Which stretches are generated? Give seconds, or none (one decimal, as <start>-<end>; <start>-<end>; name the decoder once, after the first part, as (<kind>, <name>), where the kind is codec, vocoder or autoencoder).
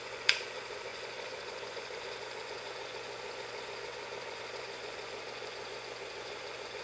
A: 0.0-6.8 (vocoder, Vocos)